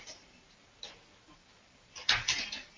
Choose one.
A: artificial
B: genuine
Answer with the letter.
B